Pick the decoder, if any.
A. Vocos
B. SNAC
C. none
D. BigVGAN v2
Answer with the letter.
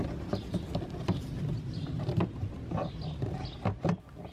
C